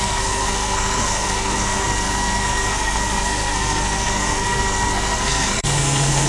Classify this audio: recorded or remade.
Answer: remade